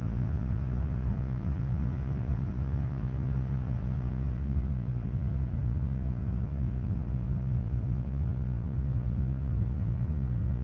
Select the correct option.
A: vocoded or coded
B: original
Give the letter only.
A